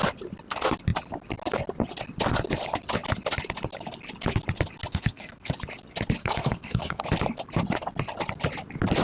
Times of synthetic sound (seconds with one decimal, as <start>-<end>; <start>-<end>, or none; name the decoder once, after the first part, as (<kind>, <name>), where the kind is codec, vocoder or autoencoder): 4.9-5.5 (codec, SNAC); 6.2-7.0